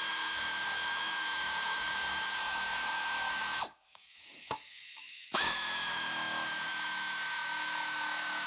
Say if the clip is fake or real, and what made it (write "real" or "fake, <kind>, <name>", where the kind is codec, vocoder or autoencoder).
fake, autoencoder, DAC-VAE